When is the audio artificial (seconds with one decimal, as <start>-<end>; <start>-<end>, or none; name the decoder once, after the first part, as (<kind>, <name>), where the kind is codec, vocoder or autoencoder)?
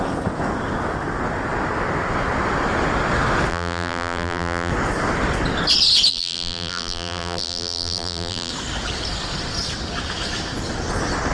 3.5-4.7 (vocoder, BigVGAN v2); 6.1-8.5